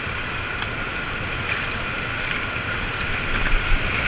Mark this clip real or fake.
real